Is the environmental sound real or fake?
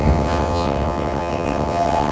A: fake